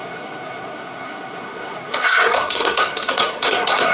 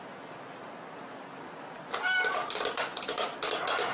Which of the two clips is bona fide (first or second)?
second